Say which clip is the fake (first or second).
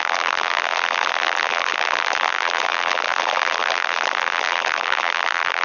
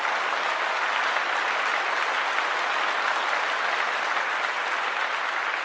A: first